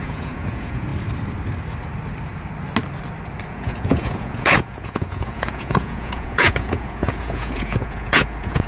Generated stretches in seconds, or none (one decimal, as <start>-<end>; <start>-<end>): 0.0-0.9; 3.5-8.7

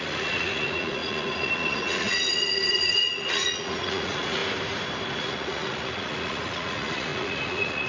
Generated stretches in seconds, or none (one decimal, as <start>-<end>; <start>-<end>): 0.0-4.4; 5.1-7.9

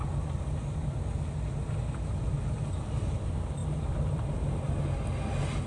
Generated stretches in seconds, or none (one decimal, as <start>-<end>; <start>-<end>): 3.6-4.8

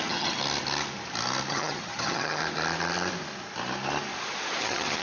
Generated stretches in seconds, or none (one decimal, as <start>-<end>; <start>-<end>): 0.0-0.4; 1.5-2.4; 4.6-5.0

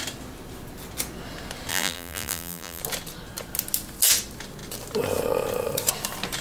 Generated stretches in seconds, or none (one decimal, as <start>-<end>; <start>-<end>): 1.7-2.8